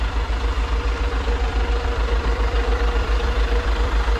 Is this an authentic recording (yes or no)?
no